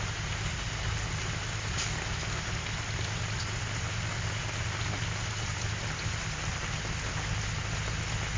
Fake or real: real